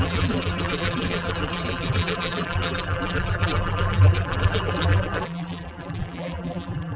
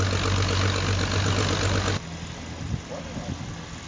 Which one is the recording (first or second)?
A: second